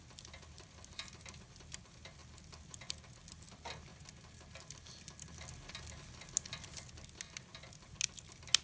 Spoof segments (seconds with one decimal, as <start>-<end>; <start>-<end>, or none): none

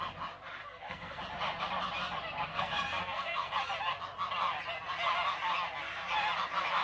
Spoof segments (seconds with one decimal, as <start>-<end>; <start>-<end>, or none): 0.6-1.2; 2.5-3.5

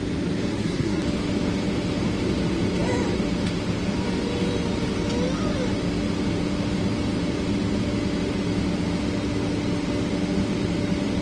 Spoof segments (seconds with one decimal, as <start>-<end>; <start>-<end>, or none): 0.5-1.0